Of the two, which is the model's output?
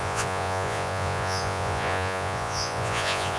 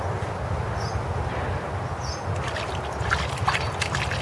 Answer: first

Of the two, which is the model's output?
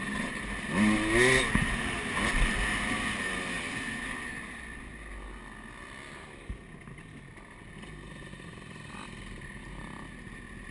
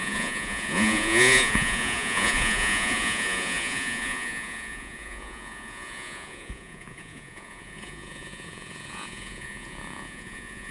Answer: second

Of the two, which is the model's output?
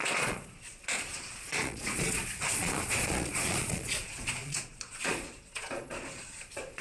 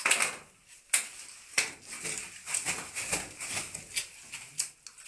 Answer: first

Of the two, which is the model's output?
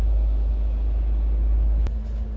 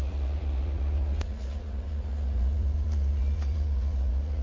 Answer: second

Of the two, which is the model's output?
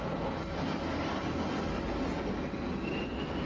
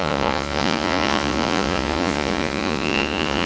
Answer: second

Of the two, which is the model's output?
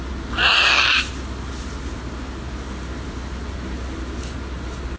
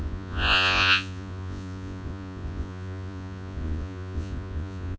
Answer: second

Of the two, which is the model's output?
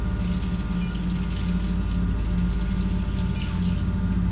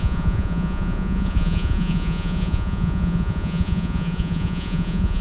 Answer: second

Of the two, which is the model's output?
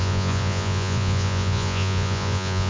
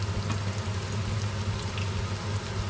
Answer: first